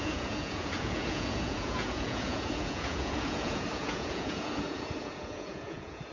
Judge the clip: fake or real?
fake